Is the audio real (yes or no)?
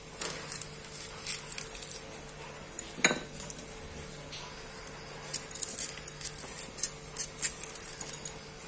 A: yes